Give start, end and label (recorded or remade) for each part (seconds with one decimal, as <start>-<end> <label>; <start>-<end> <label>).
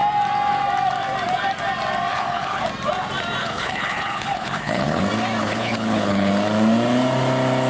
0.0-2.1 recorded; 2.1-2.6 remade; 2.6-3.4 recorded; 3.4-5.0 remade; 5.0-5.4 recorded; 5.4-6.3 remade; 6.3-7.7 recorded